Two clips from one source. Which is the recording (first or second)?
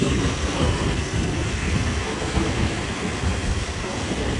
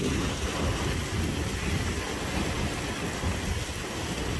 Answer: second